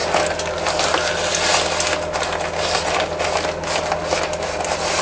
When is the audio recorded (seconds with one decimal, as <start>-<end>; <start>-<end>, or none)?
0.0-5.0

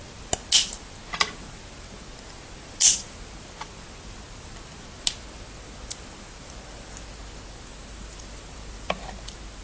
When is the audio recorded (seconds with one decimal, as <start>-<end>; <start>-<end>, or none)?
0.0-9.6

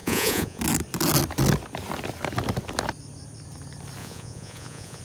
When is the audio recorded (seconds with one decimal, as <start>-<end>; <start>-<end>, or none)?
0.6-4.0

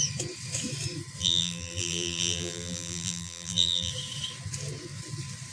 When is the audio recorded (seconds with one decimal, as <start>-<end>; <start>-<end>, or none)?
0.0-1.2; 3.9-5.5

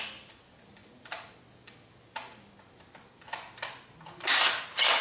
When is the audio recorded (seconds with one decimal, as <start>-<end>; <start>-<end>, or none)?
0.0-5.0